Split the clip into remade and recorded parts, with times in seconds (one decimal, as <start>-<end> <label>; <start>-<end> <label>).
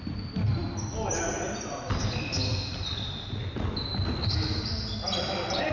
0.0-5.7 recorded